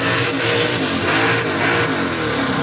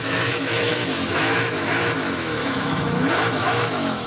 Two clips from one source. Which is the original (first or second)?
first